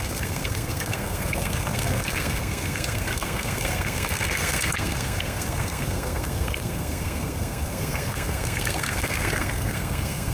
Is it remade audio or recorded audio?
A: remade